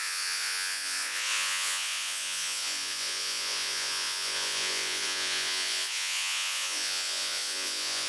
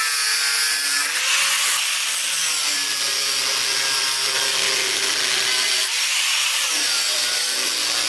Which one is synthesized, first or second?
first